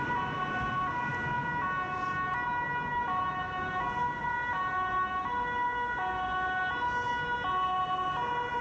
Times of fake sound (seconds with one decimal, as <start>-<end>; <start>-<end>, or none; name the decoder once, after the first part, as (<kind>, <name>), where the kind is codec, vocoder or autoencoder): none